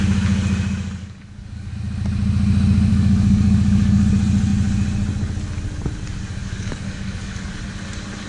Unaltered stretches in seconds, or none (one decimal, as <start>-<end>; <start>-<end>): 0.0-1.0; 1.7-2.9; 4.1-6.4; 7.5-8.3